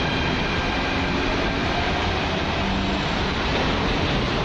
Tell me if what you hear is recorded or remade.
recorded